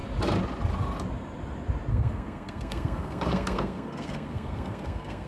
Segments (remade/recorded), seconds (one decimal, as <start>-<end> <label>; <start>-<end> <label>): 0.0-1.9 recorded; 1.9-5.3 remade